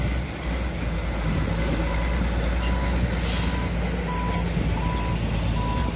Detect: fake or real real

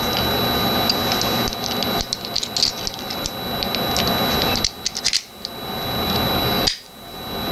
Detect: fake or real real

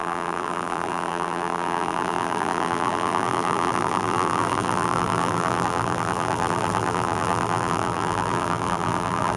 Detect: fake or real fake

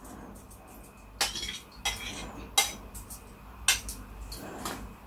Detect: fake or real real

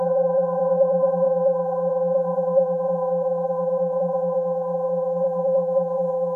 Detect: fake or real fake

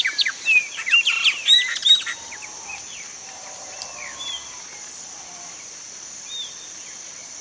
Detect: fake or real fake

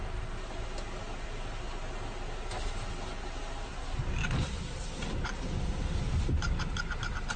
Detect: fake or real real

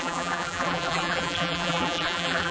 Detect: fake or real fake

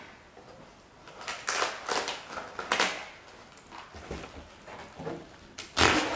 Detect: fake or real real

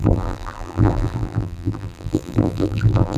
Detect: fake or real fake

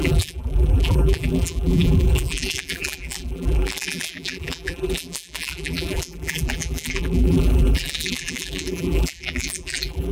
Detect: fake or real fake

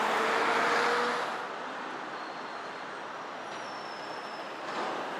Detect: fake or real real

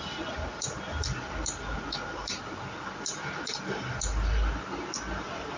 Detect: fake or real real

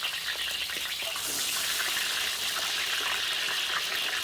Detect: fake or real real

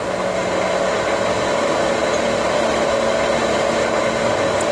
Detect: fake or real real